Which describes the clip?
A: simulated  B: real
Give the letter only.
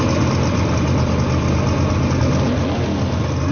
B